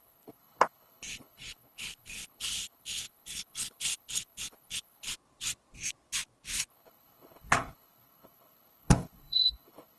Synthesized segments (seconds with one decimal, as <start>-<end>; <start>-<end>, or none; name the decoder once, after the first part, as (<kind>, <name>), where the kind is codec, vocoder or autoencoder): 0.0-5.1 (codec, HILCodec); 6.7-10.0